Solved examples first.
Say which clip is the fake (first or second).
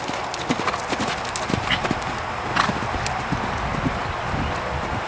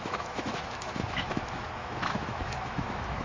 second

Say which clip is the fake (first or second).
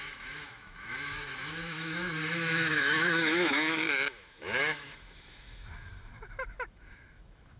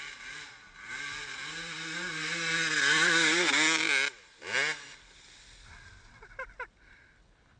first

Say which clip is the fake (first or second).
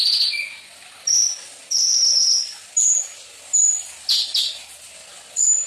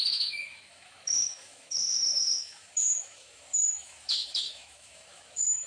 second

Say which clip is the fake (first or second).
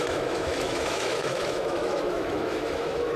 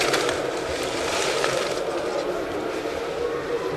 first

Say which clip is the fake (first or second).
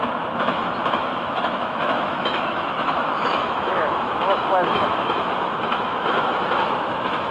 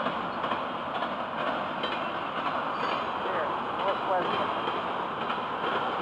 first